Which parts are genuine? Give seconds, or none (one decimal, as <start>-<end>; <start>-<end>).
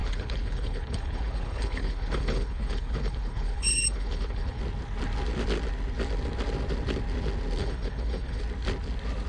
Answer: 4.6-7.6; 8.4-9.3